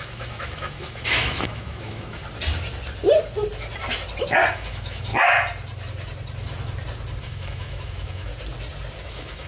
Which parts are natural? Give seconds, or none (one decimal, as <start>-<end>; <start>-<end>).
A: 2.2-4.5; 5.1-7.2; 8.3-9.0